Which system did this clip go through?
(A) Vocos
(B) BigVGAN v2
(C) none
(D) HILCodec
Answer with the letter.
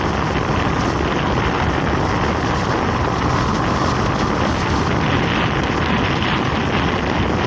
C